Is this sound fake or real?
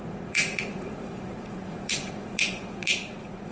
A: fake